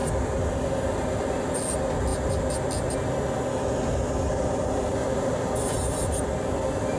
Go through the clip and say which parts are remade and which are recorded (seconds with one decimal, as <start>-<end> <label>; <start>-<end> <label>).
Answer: 0.0-7.0 recorded